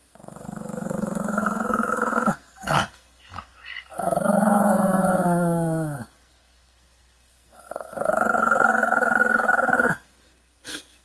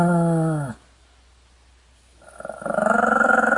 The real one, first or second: second